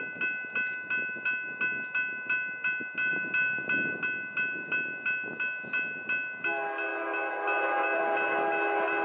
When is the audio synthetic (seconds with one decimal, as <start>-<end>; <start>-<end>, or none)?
none